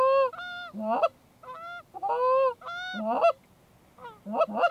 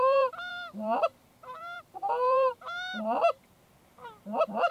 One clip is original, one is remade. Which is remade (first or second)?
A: second